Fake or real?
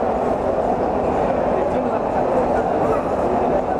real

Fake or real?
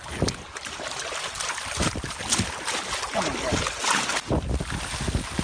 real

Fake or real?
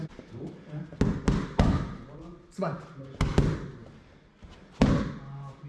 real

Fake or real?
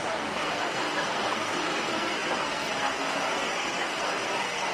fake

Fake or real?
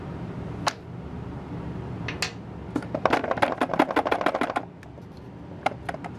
real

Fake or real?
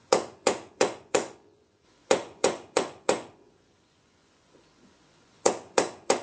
fake